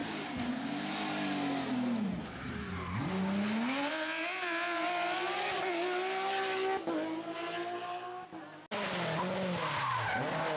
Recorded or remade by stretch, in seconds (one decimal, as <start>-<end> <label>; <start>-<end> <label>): 0.0-10.6 recorded